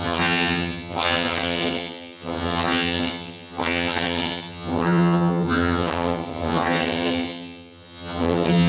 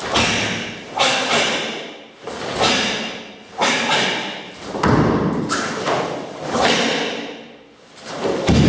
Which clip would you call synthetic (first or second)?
first